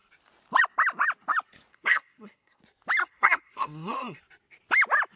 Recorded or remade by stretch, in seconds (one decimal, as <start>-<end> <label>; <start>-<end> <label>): 0.0-1.7 recorded; 1.7-2.6 remade; 2.6-3.0 recorded; 3.0-4.2 remade; 4.2-5.2 recorded